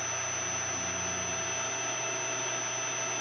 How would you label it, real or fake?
real